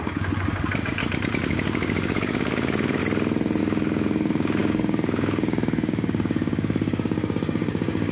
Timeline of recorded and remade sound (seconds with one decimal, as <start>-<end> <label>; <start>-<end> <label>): 0.0-1.0 remade; 1.0-1.5 recorded; 1.5-3.0 remade; 3.0-3.6 recorded; 3.6-8.1 remade